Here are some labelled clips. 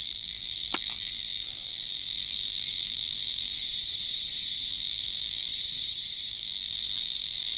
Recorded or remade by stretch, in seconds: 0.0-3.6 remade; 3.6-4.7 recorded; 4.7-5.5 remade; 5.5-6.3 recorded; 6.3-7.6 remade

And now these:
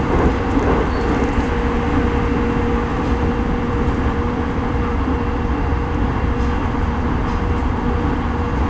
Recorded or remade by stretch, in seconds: 0.0-2.9 recorded; 2.9-7.2 remade; 7.2-8.7 recorded